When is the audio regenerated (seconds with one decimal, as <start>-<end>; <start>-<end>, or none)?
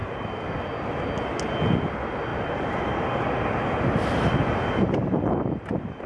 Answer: 0.0-0.9; 2.3-6.1